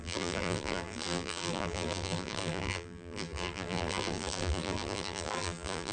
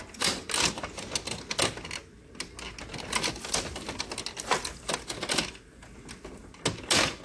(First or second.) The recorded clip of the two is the second